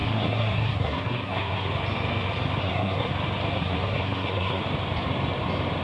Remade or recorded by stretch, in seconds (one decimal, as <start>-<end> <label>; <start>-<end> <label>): 0.0-1.7 remade; 1.7-2.6 recorded; 2.6-3.1 remade; 3.1-3.6 recorded; 3.6-4.6 remade; 4.6-5.8 recorded